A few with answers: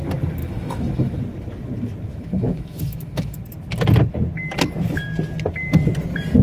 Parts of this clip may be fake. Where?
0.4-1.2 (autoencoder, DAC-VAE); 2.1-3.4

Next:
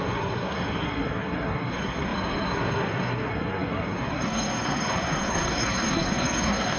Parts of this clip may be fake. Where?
0.0-6.8 (codec, SNAC)

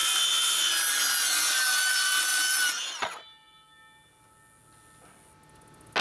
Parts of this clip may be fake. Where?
0.0-0.7 (vocoder, BigVGAN v2)

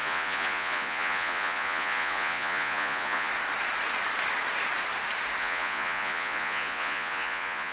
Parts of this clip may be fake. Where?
0.0-3.3 (vocoder, Vocos); 5.4-7.7